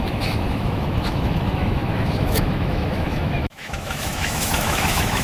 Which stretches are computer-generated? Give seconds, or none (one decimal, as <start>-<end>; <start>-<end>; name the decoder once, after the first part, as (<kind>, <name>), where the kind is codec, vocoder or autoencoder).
0.0-5.2 (autoencoder, DAC-VAE)